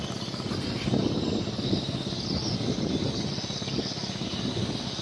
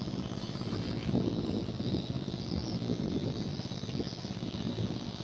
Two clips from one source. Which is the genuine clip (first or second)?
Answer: first